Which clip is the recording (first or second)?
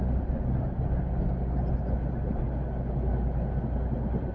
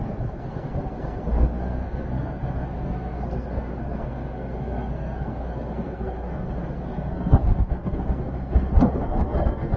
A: first